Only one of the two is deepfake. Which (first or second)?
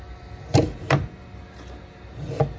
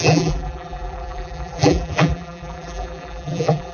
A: second